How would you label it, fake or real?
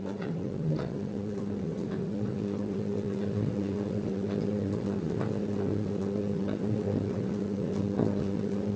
fake